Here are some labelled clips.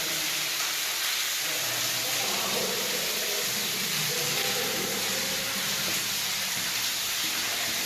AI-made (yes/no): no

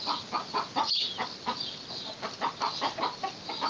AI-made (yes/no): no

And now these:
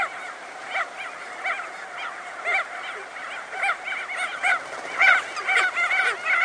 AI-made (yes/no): no